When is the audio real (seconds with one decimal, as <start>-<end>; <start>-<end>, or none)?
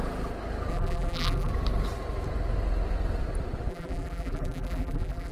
0.0-0.7; 1.5-3.7